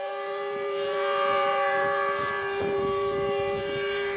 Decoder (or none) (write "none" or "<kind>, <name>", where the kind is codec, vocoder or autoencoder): vocoder, BigVGAN v2